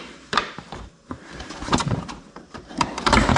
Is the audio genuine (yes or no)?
no